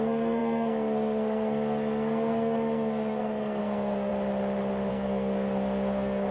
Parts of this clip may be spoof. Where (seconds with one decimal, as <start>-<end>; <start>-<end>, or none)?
0.0-4.1; 4.9-6.3